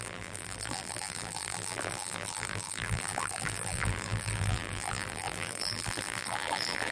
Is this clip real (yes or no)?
no